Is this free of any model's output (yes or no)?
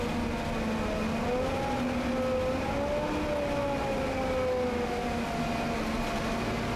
yes